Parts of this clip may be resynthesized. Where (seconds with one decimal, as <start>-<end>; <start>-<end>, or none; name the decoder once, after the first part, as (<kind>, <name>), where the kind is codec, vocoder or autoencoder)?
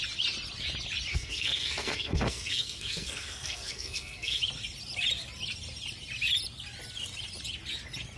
1.1-4.4 (codec, SNAC)